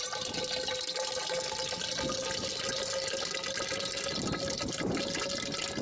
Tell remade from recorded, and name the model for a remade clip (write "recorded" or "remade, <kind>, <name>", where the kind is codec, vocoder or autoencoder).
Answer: recorded